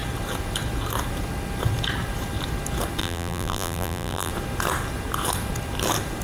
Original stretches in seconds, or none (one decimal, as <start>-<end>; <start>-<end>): 0.0-3.0; 4.3-6.2